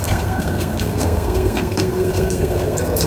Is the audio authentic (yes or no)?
no